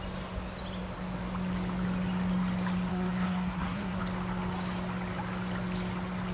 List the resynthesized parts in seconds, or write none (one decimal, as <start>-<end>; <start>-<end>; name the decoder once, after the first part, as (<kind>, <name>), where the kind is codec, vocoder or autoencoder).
2.9-4.0 (codec, SNAC)